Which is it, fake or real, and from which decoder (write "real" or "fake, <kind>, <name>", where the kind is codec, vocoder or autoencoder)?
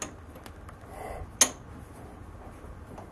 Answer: real